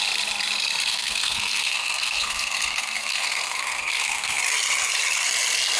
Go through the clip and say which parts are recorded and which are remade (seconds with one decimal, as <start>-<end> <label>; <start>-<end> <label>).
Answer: 0.0-0.9 recorded; 0.9-4.4 remade; 4.4-5.8 recorded